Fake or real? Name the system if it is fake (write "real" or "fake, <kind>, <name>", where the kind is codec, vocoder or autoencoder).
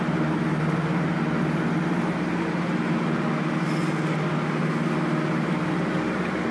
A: real